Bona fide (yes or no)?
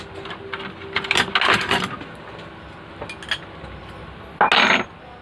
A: yes